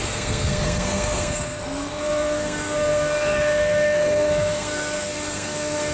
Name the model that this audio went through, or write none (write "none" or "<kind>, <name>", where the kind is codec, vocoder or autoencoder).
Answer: codec, SNAC